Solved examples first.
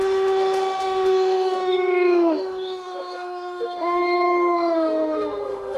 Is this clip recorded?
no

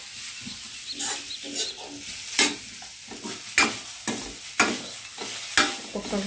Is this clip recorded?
yes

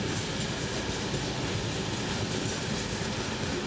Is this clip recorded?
yes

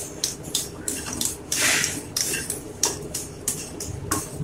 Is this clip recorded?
no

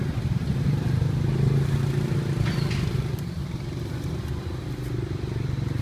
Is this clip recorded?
yes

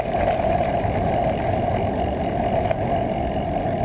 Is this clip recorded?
yes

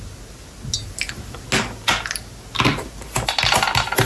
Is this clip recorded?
yes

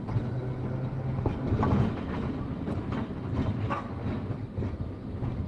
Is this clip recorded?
yes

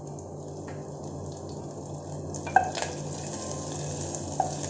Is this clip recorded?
yes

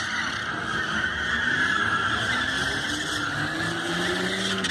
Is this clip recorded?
yes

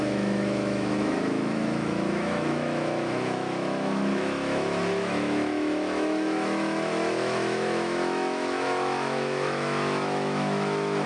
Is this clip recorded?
no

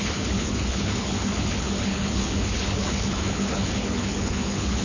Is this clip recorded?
no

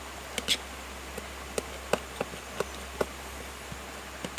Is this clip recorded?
yes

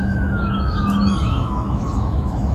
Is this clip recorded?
no